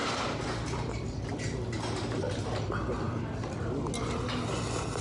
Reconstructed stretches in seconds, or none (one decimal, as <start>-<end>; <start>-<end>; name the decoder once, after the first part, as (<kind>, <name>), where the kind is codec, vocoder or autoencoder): none